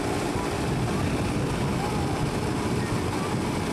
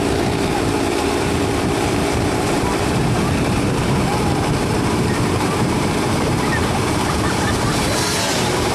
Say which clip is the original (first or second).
first